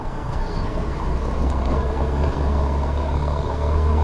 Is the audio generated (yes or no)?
yes